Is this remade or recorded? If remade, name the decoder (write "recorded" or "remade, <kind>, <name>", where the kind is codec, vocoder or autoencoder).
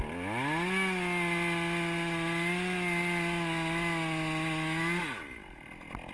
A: recorded